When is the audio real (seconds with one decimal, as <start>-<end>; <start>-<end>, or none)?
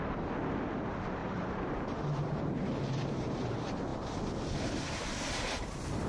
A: 0.0-1.2; 3.5-6.1